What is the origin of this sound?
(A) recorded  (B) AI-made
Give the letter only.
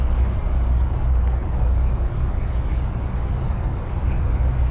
B